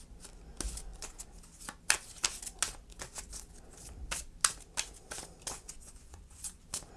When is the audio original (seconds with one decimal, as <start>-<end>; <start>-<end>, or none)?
0.0-5.5; 6.6-7.0